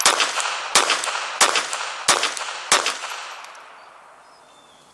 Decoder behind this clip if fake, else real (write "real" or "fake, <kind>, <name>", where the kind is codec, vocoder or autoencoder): real